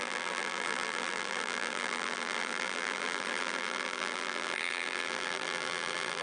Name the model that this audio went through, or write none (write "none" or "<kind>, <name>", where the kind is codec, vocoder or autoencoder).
vocoder, BigVGAN v2